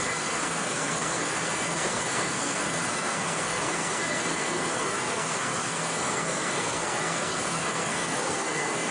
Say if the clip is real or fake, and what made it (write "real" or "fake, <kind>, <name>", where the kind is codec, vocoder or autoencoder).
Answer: fake, codec, SNAC